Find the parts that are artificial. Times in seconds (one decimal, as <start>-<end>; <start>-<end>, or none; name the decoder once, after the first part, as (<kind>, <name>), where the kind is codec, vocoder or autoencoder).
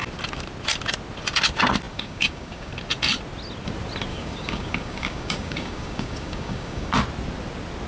1.9-2.7 (codec, DAC); 4.1-6.9